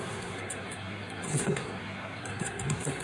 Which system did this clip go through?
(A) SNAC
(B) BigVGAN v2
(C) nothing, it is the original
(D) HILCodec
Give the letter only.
A